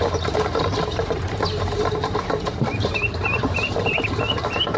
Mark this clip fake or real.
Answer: fake